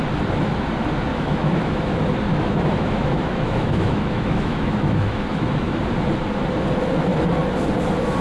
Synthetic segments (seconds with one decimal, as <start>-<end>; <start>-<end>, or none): 1.1-1.8; 2.3-5.8